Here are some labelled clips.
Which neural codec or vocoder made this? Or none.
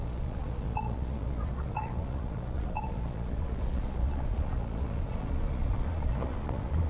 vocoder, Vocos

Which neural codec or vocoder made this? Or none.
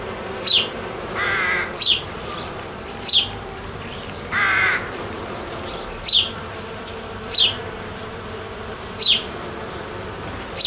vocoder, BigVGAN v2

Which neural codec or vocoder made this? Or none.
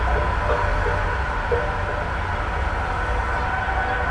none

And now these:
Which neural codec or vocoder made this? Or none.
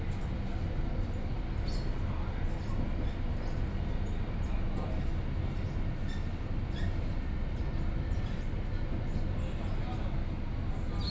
none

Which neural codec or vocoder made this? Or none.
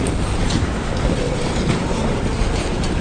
none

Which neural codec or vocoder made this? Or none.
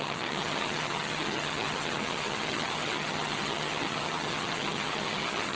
vocoder, HiFi-GAN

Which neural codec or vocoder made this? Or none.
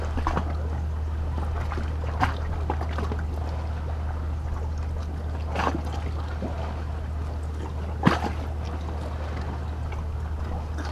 none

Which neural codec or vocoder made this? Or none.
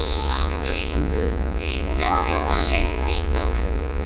vocoder, Vocos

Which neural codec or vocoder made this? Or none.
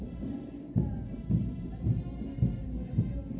none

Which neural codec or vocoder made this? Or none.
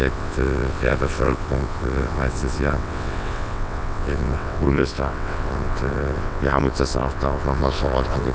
vocoder, WaveNeXt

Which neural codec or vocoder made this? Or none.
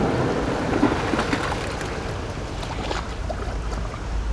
none